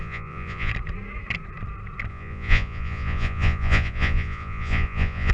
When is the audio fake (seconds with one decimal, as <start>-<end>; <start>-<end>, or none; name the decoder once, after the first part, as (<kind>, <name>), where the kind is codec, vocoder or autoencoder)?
0.0-0.7 (vocoder, Vocos); 2.1-5.3